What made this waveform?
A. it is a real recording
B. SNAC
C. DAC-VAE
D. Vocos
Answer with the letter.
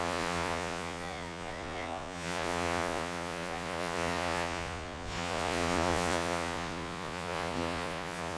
D